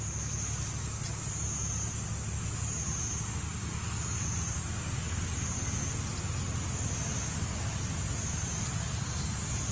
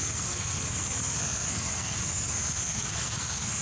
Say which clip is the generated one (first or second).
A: second